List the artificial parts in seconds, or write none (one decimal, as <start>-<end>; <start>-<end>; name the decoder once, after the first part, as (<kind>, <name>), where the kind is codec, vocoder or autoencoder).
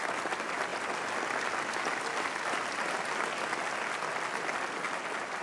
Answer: none